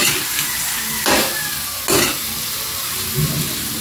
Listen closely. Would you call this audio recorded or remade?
recorded